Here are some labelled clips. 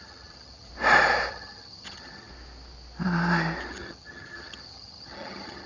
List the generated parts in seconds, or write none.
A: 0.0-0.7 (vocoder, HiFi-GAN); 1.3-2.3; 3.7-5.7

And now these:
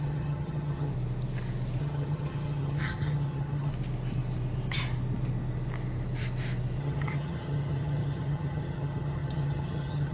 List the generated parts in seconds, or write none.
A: 0.0-0.9 (vocoder, HiFi-GAN); 1.8-3.7; 6.8-10.1

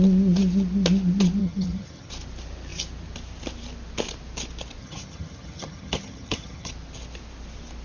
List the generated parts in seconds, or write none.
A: 1.4-2.1 (vocoder, HiFi-GAN); 4.8-6.7

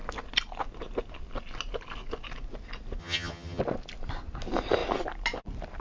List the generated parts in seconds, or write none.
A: 3.0-3.6 (vocoder, HiFi-GAN)

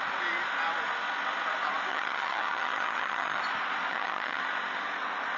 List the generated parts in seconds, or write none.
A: 1.9-3.4 (vocoder, HiFi-GAN); 3.9-4.4

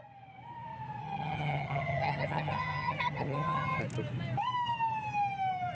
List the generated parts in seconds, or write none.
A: 1.0-3.8 (vocoder, HiFi-GAN)

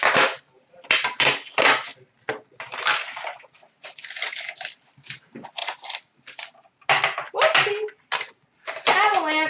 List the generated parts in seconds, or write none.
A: none